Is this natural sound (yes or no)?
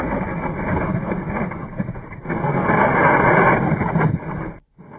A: yes